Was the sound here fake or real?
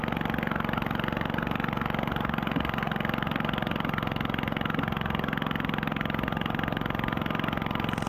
real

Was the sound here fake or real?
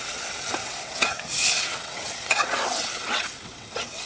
fake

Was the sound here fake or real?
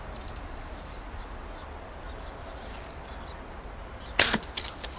real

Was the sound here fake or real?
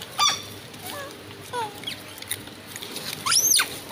real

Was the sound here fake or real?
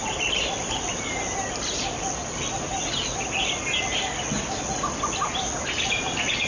real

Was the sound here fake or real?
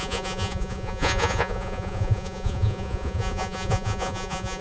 fake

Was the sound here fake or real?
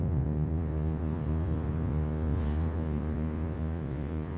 fake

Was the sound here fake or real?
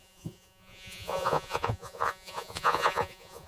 fake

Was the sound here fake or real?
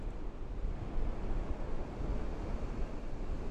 real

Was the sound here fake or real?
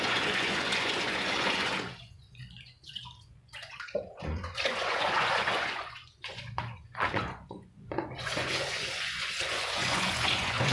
fake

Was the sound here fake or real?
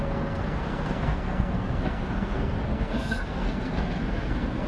fake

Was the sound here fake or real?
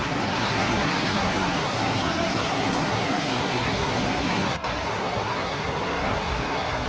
fake